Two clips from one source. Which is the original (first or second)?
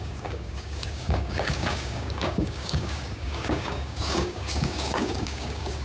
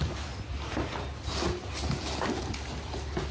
second